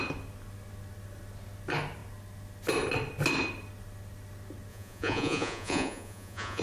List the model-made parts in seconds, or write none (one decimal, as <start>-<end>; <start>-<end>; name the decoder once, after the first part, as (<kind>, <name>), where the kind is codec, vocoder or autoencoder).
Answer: 4.7-6.6 (vocoder, Vocos)